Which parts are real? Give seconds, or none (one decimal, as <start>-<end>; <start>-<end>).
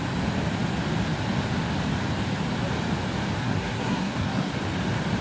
0.0-3.4; 4.5-5.2